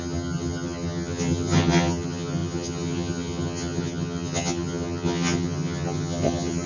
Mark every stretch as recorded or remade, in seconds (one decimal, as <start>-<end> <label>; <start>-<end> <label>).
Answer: 0.0-6.7 remade